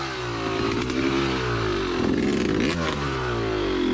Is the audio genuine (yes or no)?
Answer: yes